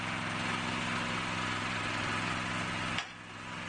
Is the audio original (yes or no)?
yes